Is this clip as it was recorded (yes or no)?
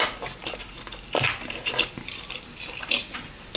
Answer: yes